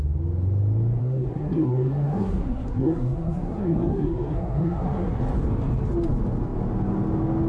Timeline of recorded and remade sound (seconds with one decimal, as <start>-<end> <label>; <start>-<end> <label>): 0.0-1.0 recorded; 1.0-5.2 remade; 5.2-7.5 recorded

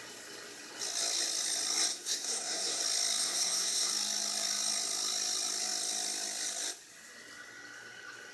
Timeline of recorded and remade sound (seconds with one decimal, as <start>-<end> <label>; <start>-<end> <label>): 0.0-1.9 recorded; 1.9-2.8 remade; 2.8-3.2 recorded; 3.2-3.9 remade; 3.9-8.3 recorded

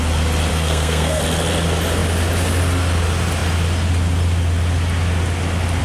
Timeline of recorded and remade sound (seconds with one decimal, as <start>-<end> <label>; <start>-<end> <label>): 0.0-0.5 recorded; 0.5-1.2 remade; 1.2-5.8 recorded

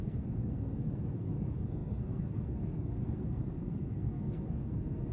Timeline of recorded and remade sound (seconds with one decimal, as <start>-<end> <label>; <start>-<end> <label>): 0.0-5.1 remade

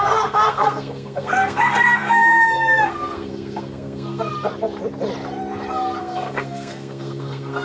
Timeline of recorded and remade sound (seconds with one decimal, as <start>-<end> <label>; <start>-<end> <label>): 0.0-4.3 remade; 4.3-6.0 recorded; 6.0-7.6 remade

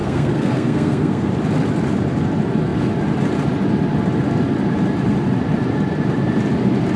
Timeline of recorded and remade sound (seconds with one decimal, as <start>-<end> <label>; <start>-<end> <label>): 0.0-1.3 remade; 1.3-7.0 recorded